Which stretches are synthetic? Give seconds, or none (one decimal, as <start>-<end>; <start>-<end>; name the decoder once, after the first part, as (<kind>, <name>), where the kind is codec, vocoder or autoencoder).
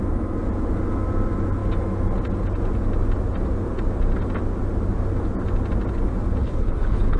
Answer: 6.4-7.2 (codec, HILCodec)